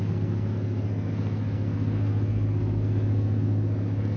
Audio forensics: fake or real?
fake